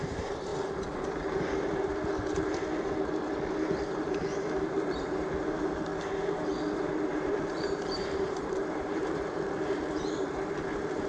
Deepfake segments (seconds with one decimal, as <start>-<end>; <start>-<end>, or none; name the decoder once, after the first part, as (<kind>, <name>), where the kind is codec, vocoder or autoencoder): 0.0-0.5 (vocoder, BigVGAN v2); 3.8-5.9; 6.7-11.1